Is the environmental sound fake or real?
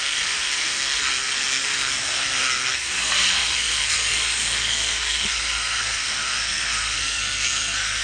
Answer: fake